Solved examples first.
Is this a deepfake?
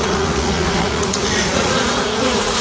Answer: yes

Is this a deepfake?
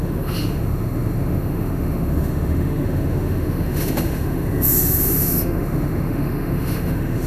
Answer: yes